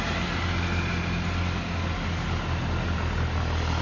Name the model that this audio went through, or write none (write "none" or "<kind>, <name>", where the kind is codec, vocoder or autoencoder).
none